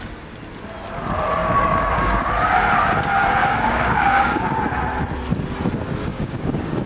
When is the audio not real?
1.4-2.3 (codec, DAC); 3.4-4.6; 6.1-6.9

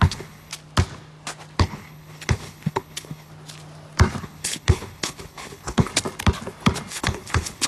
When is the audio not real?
0.0-0.5 (codec, HILCodec); 1.6-3.3; 4.2-5.9; 6.9-7.7

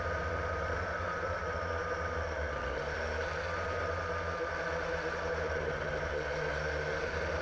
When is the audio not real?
none

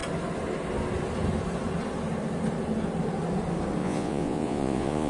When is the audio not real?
3.8-5.1 (vocoder, Vocos)